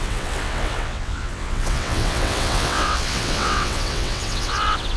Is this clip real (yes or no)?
no